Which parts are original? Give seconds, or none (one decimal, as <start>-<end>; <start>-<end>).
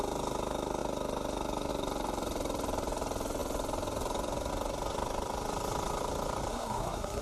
0.0-6.5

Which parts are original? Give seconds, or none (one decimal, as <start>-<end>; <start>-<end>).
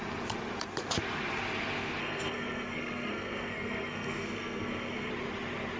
0.0-2.0; 5.1-5.8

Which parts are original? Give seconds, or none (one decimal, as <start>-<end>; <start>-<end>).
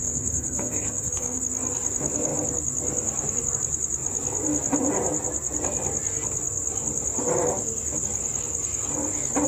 1.4-9.5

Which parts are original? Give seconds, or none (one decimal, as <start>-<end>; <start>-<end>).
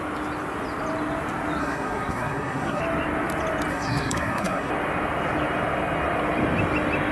0.0-1.6; 2.8-3.7; 4.7-7.1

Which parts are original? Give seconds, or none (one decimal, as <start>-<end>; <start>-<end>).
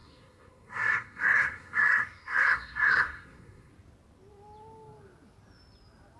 3.7-6.2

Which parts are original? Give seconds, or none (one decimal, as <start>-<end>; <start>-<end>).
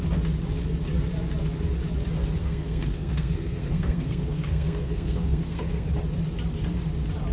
0.0-2.4; 5.9-7.3